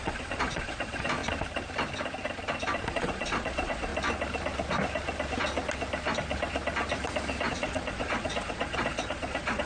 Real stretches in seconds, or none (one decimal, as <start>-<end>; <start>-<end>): 1.2-2.9; 3.9-7.5